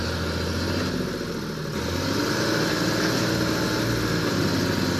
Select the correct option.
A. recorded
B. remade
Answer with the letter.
A